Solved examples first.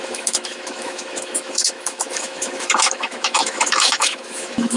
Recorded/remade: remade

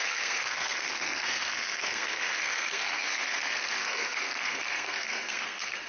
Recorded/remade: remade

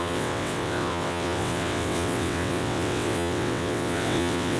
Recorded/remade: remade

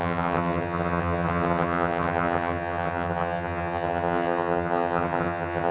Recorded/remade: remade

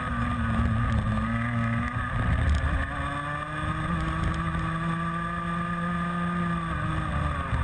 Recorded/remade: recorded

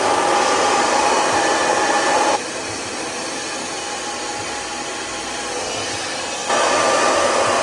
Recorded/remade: recorded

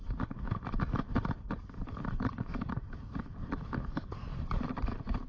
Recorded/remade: remade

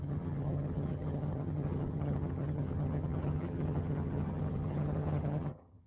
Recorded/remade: remade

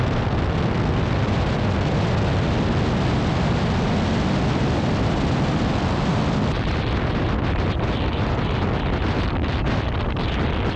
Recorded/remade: recorded